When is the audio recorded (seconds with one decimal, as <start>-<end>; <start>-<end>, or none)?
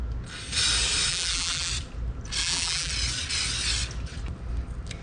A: 0.0-1.1; 1.7-2.4; 2.9-5.0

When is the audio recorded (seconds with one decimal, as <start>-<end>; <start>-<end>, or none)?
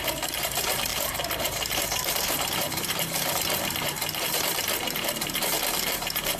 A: none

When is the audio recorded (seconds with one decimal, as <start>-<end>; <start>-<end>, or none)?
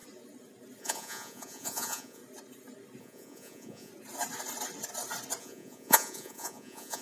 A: 0.0-0.8; 2.2-3.0; 3.9-5.4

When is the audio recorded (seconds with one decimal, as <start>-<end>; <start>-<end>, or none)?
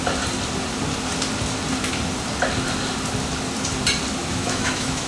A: 0.0-4.2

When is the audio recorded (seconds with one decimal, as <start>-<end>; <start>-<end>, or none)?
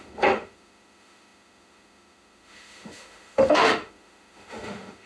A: none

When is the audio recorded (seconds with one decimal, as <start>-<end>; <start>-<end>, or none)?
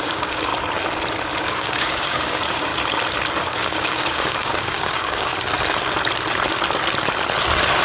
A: 0.5-1.4; 2.7-3.4; 5.3-7.8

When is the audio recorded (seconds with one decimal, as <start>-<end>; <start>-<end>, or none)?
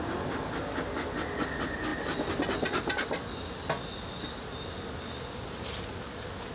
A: 0.0-6.5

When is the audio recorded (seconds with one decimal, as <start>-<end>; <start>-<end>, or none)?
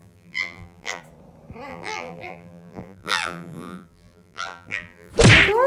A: 1.0-1.7; 5.1-5.7